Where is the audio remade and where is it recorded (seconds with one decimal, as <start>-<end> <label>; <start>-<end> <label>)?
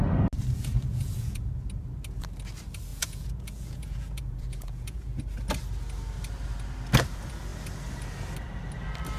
0.0-0.9 recorded; 0.9-1.5 remade; 1.5-2.9 recorded; 2.9-5.2 remade; 5.2-9.2 recorded